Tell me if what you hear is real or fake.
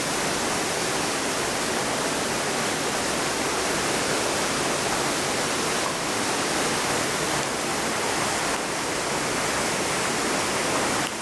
real